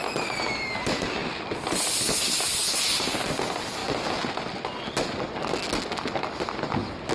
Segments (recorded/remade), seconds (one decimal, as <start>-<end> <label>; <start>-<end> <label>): 0.0-1.2 recorded; 1.2-2.9 remade; 2.9-7.1 recorded